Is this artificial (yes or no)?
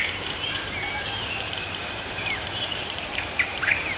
yes